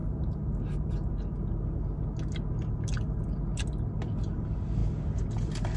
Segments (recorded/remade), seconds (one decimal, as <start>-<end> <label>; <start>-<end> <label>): 0.0-5.8 recorded